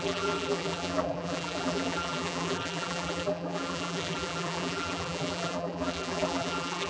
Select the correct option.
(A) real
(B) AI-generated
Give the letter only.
B